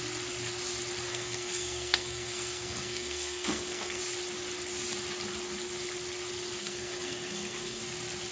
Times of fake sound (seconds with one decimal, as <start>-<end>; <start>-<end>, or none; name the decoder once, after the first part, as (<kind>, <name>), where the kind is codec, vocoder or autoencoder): 1.1-4.0 (codec, SNAC); 6.6-7.8